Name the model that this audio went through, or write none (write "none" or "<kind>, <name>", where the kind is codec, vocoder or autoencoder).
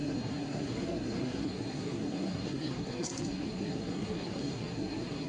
codec, SNAC